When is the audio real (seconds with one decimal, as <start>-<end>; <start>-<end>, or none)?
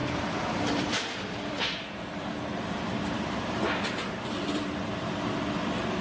none